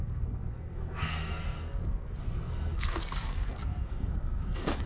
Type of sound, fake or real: fake